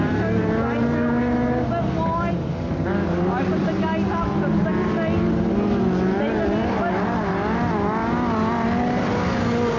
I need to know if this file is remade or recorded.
recorded